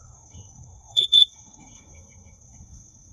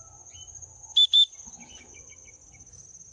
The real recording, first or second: second